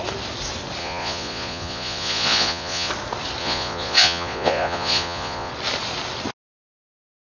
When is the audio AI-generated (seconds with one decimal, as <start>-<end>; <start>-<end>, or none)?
0.8-2.9; 3.4-5.5